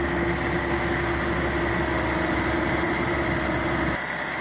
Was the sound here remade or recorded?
recorded